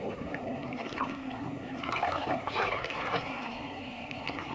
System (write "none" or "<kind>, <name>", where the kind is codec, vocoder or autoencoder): codec, SNAC